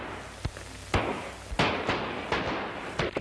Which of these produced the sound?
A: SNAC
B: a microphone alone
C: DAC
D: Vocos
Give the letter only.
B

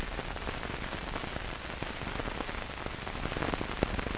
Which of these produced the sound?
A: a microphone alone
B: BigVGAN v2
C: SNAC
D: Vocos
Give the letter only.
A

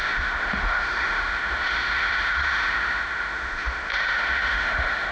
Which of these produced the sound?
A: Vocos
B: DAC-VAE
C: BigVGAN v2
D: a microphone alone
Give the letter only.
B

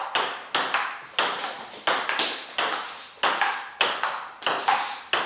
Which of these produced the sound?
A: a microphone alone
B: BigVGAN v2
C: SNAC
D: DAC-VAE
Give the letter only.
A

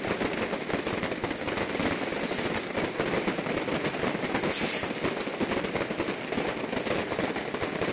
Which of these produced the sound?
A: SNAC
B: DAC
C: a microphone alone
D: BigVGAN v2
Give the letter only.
C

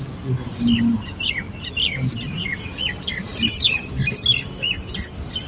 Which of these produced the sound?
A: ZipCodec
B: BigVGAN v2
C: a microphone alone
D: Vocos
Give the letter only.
C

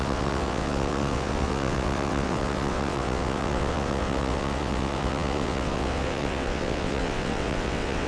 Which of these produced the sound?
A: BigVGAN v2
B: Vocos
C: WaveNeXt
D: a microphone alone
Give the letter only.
C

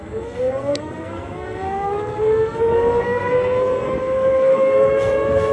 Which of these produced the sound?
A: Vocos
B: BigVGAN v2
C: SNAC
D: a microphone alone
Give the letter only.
C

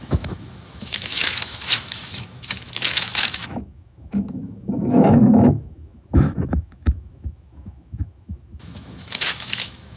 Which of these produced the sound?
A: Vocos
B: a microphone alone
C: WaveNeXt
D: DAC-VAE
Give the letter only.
D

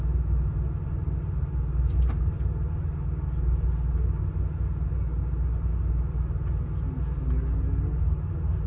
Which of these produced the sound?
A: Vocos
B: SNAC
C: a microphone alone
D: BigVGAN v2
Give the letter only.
C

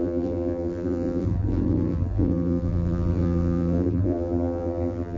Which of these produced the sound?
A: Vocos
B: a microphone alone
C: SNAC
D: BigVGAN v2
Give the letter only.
D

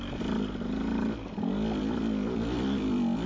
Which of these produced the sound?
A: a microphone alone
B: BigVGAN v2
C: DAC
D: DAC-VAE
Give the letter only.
A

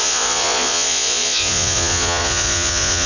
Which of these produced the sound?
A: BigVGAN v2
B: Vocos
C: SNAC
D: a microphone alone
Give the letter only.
B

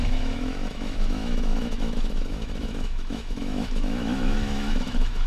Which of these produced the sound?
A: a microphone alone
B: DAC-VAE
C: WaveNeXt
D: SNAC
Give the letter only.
B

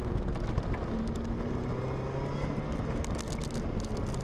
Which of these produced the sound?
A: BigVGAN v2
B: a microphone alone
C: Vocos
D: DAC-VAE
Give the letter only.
B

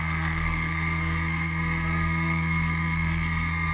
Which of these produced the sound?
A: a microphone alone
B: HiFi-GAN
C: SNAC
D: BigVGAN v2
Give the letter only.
C